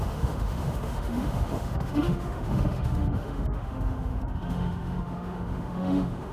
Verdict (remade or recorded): remade